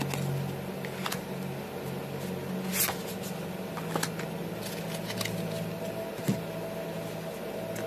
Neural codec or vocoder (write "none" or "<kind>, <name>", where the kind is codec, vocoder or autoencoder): none